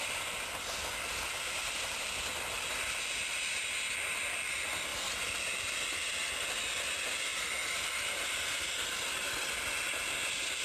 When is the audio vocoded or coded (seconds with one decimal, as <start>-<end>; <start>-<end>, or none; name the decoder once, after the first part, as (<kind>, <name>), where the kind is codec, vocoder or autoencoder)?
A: none